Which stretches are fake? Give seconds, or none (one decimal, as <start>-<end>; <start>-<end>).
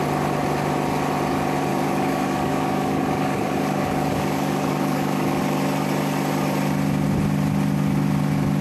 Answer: 1.7-5.4